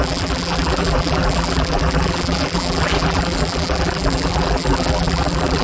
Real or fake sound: fake